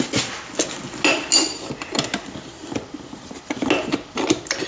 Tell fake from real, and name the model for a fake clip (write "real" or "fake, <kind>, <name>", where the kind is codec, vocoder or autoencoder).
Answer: real